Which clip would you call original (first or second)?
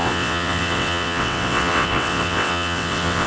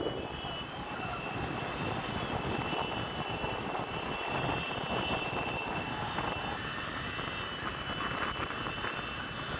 second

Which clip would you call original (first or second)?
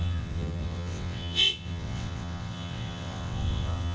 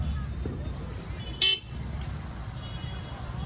second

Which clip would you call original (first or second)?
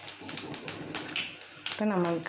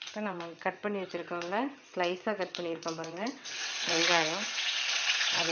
first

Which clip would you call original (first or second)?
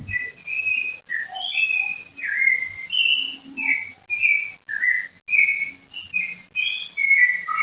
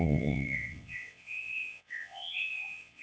first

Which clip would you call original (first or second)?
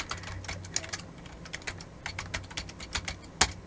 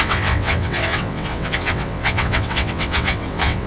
first